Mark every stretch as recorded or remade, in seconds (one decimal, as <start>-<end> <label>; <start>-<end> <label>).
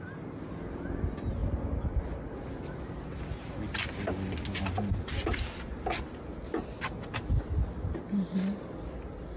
0.0-9.4 recorded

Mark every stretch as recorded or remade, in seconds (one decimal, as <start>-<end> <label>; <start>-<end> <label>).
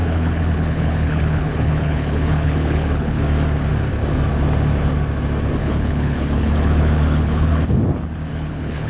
0.0-3.2 remade; 3.2-5.6 recorded; 5.6-7.8 remade; 7.8-8.3 recorded; 8.3-8.9 remade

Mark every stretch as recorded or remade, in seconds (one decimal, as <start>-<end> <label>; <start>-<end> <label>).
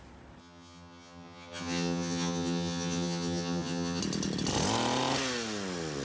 0.0-0.4 recorded; 0.4-4.0 remade; 4.0-6.0 recorded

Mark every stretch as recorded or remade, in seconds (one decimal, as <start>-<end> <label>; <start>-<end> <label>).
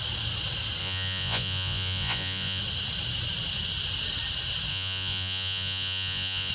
0.0-0.8 recorded; 0.8-2.6 remade; 2.6-4.7 recorded; 4.7-6.5 remade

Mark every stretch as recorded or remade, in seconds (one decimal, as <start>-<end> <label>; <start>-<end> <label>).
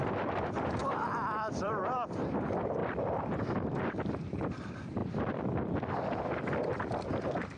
0.0-0.8 remade; 0.8-1.5 recorded; 1.5-2.8 remade; 2.8-4.1 recorded; 4.1-5.0 remade; 5.0-6.5 recorded; 6.5-7.6 remade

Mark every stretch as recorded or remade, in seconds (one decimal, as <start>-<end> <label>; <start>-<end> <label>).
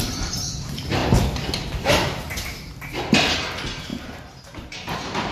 0.0-5.3 remade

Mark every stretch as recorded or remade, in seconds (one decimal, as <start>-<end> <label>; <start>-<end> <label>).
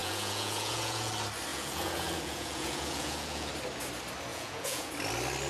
0.0-1.1 remade; 1.1-1.5 recorded; 1.5-3.5 remade; 3.5-4.3 recorded; 4.3-4.9 remade; 4.9-5.5 recorded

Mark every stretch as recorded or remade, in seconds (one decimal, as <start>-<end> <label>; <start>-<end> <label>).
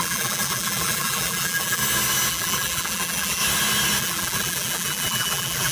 0.0-1.8 remade; 1.8-2.3 recorded; 2.3-3.4 remade; 3.4-4.0 recorded; 4.0-5.7 remade